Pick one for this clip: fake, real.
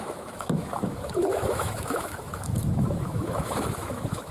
fake